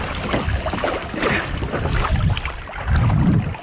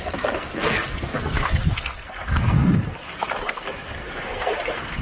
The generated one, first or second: second